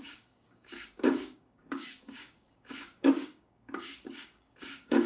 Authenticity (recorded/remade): remade